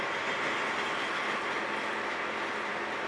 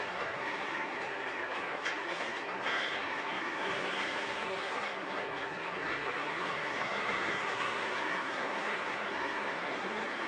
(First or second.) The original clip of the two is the first